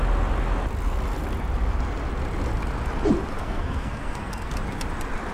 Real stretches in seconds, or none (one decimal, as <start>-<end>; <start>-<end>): 0.0-3.4; 4.5-5.3

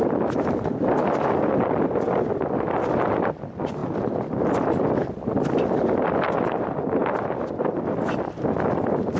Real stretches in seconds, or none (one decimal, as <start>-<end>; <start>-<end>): 0.0-9.2

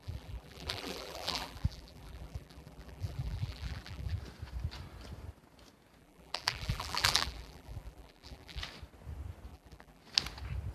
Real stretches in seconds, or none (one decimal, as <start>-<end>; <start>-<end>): 4.2-6.0; 8.6-9.5; 10.0-10.7